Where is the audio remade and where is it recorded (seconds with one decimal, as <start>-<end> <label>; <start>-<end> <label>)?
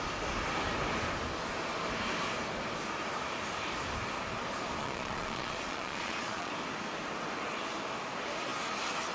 0.0-4.8 recorded; 4.8-6.5 remade; 6.5-9.1 recorded